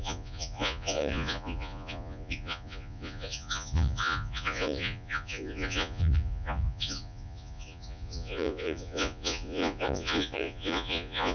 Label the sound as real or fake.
fake